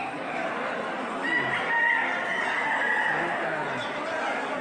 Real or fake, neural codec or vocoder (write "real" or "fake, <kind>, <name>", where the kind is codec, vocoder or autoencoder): real